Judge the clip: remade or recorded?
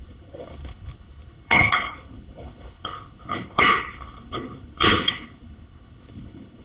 remade